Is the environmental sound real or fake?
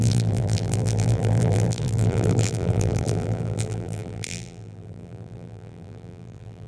fake